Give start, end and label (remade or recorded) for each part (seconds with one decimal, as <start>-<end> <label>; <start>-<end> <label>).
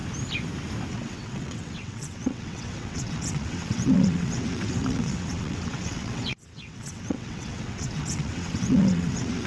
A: 0.0-0.9 recorded; 0.9-9.5 remade